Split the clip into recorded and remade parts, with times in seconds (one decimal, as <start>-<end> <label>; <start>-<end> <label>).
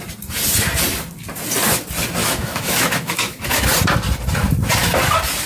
0.0-2.2 recorded; 2.2-3.7 remade; 3.7-5.5 recorded